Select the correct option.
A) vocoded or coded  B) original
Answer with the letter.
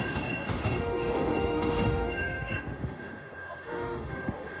A